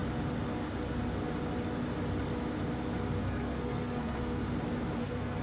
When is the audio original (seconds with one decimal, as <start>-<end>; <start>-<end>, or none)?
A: 0.0-3.2; 4.4-5.0